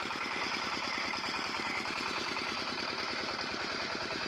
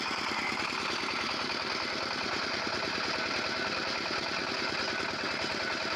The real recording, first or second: second